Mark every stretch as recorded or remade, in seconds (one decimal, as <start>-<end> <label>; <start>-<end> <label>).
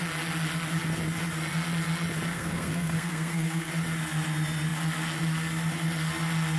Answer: 0.0-2.3 recorded; 2.3-3.7 remade; 3.7-6.6 recorded